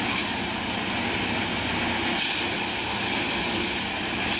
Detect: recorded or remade recorded